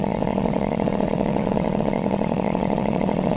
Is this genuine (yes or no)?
no